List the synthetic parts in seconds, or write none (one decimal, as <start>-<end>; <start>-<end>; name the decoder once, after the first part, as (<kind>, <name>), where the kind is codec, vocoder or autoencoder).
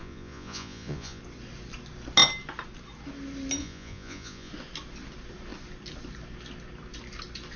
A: 0.0-1.2 (vocoder, Vocos); 3.6-4.5